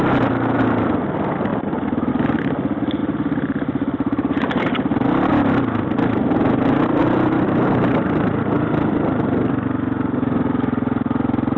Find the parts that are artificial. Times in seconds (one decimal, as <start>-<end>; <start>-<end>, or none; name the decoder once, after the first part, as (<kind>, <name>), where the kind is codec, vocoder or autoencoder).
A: 3.0-4.6 (vocoder, BigVGAN v2); 7.0-9.5

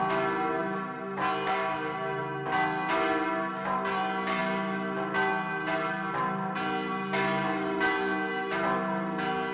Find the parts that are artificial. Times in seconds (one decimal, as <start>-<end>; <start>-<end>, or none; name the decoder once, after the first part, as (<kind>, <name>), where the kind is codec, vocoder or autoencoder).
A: none

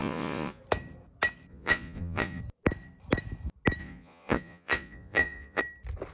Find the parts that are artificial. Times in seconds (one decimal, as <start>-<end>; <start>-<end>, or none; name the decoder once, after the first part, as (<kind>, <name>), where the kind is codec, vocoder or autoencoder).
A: 0.0-0.6 (vocoder, Vocos); 1.5-2.4; 3.8-5.6